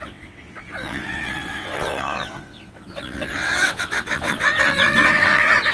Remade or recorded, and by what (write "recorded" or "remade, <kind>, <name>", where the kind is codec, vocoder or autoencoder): remade, vocoder, WaveNeXt